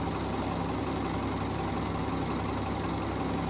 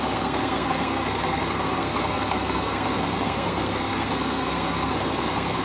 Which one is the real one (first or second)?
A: first